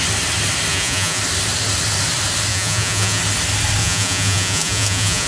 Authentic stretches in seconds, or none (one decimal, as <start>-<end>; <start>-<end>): 0.0-0.7; 1.2-2.5; 3.2-3.8